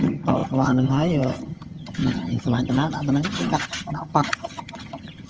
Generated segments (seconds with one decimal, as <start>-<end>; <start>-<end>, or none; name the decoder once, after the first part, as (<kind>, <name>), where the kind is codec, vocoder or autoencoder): 0.0-5.3 (vocoder, HiFi-GAN)